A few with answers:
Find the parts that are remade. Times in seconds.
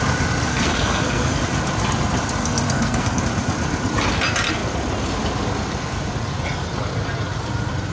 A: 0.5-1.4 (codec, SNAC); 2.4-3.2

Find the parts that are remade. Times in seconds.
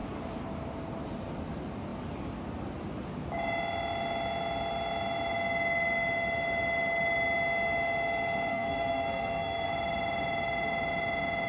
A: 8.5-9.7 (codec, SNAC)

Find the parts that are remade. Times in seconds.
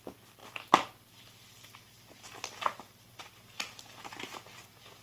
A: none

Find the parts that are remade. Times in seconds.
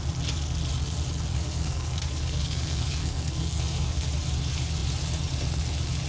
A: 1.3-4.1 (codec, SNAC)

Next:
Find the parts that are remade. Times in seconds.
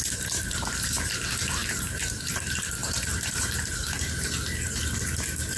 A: 1.6-2.3 (vocoder, BigVGAN v2); 2.8-3.5